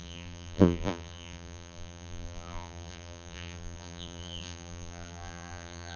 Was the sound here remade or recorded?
remade